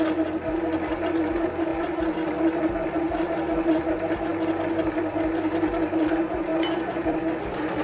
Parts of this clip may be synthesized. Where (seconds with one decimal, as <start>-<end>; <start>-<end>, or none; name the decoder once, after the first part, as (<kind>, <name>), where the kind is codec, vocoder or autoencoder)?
6.5-7.8 (vocoder, BigVGAN v2)